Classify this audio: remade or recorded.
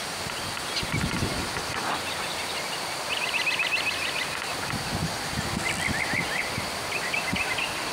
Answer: recorded